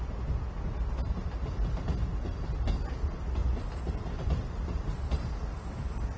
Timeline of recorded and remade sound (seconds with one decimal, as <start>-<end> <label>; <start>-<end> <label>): 0.0-3.4 recorded; 3.4-5.3 remade; 5.3-6.2 recorded